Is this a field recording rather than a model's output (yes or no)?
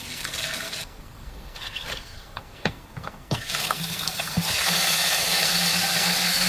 no